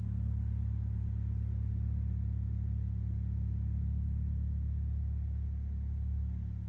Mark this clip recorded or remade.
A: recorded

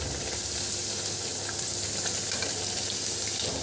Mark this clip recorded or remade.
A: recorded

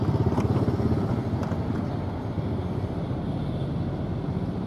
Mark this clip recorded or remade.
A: recorded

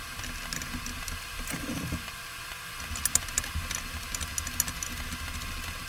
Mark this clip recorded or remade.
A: recorded